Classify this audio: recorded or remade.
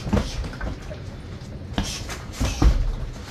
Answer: recorded